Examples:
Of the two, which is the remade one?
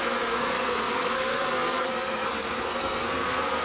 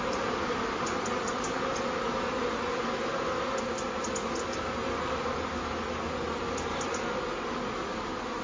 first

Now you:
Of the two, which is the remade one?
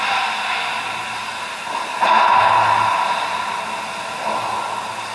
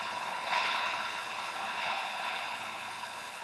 second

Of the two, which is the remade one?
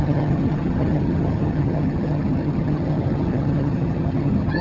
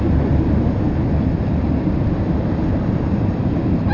first